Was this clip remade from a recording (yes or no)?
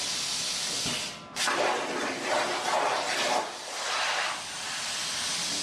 no